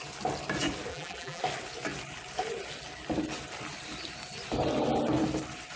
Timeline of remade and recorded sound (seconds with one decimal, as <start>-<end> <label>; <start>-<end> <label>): 0.0-0.9 recorded; 0.9-1.4 remade; 1.4-5.8 recorded